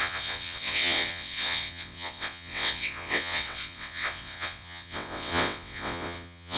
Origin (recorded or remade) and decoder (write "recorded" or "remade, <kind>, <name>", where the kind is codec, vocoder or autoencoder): remade, vocoder, WaveNeXt